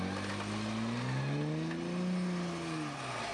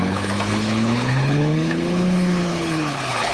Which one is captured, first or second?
first